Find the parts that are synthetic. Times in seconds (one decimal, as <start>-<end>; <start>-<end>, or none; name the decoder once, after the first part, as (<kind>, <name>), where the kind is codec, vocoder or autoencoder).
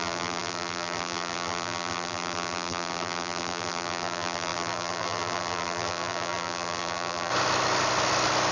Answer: 0.0-7.3 (vocoder, BigVGAN v2)